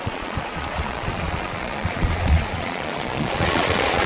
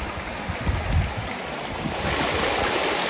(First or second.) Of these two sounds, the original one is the second